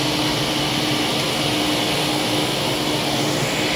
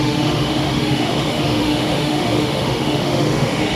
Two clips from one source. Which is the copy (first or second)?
second